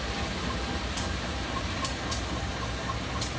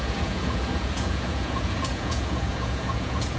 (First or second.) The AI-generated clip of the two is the second